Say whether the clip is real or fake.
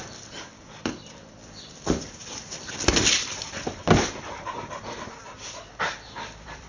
fake